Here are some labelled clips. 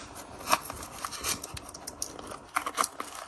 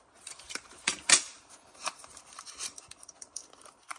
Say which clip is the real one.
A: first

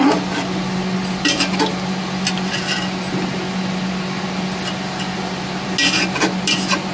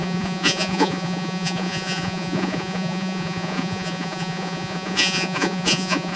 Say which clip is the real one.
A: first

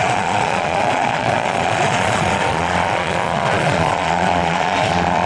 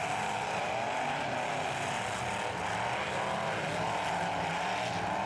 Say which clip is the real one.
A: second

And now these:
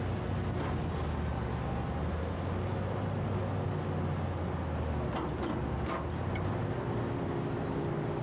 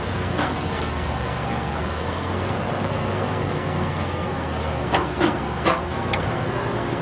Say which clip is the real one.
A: first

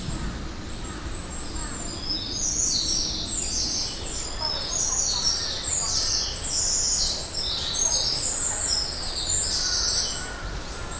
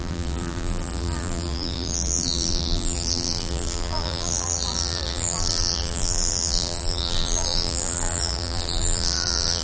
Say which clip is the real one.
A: first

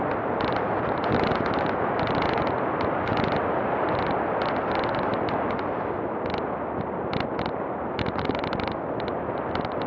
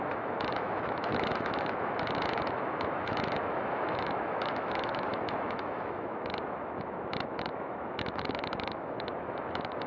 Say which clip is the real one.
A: first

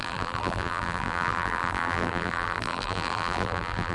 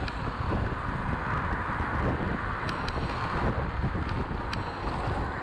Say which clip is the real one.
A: second